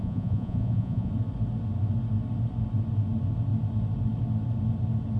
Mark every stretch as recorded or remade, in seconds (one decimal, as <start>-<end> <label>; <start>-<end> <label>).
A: 0.0-1.1 remade; 1.1-5.2 recorded